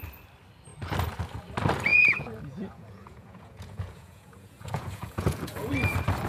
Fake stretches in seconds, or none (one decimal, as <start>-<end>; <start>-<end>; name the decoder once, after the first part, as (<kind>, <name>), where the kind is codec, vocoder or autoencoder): 1.9-5.7 (vocoder, Vocos)